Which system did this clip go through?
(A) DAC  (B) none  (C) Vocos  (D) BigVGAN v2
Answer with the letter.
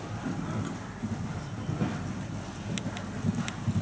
B